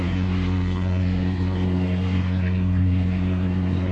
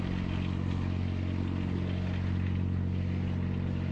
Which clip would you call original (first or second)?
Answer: second